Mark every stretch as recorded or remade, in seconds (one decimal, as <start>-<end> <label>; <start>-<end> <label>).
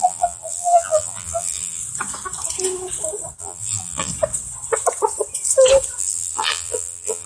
0.0-1.8 remade; 1.8-3.4 recorded; 3.4-4.1 remade; 4.1-6.0 recorded; 6.0-7.3 remade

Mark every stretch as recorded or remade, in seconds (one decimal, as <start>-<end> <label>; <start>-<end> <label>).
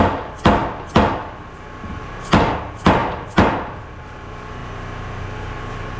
0.0-6.0 recorded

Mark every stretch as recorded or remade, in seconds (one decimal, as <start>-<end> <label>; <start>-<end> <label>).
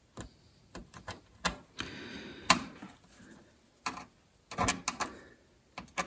0.0-6.1 recorded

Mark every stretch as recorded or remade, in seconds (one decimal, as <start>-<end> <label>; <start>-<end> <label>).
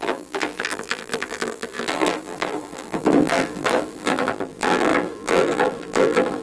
0.0-6.4 remade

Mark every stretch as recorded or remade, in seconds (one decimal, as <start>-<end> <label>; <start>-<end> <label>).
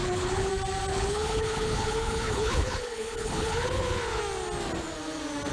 0.0-0.5 remade; 0.5-0.9 recorded; 0.9-4.2 remade; 4.2-5.5 recorded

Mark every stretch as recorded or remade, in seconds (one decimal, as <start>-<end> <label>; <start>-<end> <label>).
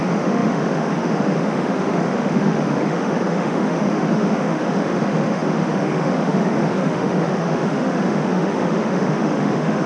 0.0-9.9 remade